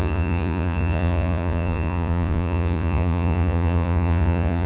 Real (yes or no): no